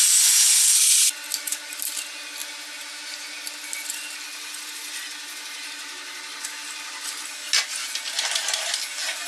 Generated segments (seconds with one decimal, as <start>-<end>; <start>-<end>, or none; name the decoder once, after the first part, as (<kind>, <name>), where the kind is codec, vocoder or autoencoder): none